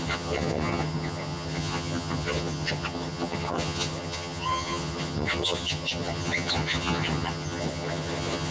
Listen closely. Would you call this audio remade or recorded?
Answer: remade